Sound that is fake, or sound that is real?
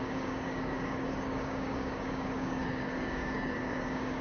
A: fake